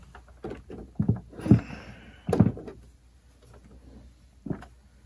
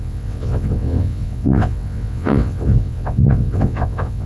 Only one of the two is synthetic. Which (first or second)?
second